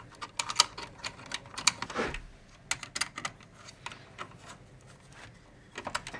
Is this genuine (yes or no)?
yes